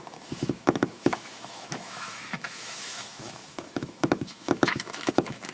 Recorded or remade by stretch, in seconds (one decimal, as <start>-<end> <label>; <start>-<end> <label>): 0.0-5.5 remade